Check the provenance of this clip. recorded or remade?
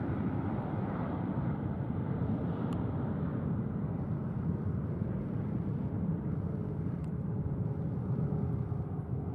remade